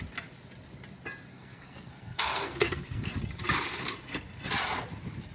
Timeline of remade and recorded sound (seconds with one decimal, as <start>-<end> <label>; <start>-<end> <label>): 0.0-1.3 recorded; 1.3-3.1 remade; 3.1-5.3 recorded